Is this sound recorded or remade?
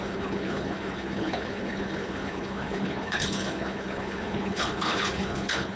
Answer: remade